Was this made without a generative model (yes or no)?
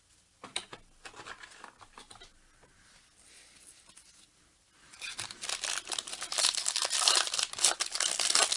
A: yes